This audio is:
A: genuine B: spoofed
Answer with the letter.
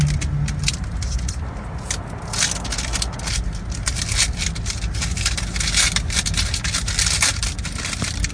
A